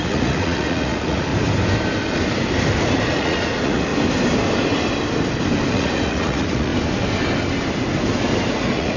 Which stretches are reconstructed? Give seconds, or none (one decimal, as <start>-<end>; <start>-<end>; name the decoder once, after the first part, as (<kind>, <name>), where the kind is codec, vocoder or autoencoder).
0.0-1.3 (vocoder, Vocos); 3.1-3.9; 5.7-6.7; 8.5-9.0